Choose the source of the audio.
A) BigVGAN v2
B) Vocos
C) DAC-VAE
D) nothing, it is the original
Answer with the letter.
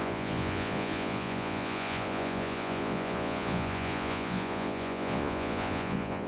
B